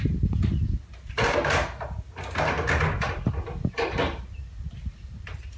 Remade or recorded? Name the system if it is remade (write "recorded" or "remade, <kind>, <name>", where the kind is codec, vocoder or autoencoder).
recorded